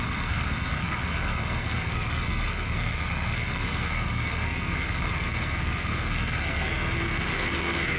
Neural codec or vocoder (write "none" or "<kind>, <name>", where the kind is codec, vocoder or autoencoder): codec, SNAC